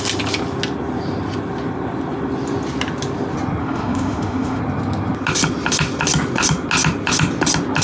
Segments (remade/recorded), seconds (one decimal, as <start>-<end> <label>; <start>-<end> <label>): 0.0-3.6 recorded; 3.6-4.6 remade; 4.6-7.8 recorded